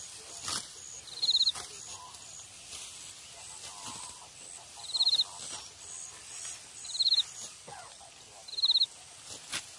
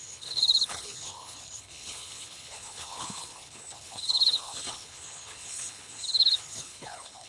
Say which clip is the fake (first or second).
second